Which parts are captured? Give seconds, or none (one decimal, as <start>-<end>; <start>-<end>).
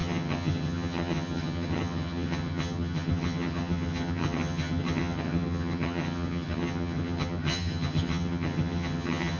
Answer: none